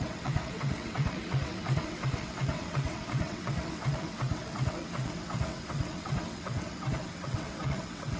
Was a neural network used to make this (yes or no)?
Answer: yes